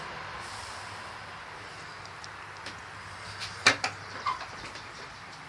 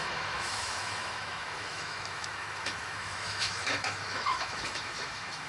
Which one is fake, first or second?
second